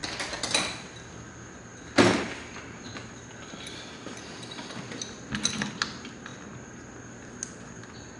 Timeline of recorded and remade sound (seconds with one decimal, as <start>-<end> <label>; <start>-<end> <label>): 0.0-8.2 recorded